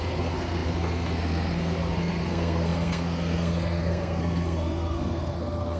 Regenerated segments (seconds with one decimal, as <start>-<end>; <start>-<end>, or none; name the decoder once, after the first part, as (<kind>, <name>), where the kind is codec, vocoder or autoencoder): 0.0-5.8 (codec, SNAC)